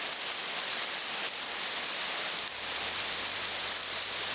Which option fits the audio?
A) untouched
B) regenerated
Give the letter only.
A